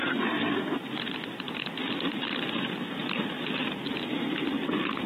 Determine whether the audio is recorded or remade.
recorded